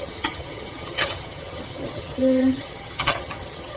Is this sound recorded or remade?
remade